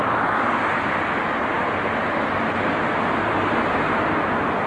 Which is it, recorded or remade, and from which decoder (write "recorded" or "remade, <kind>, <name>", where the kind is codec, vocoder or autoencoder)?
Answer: recorded